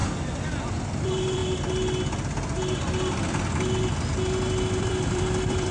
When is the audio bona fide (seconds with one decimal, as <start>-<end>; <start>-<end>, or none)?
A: 0.0-1.0; 1.4-4.8